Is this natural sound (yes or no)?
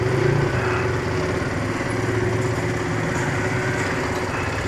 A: yes